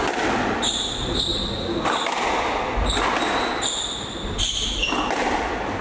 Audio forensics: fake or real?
real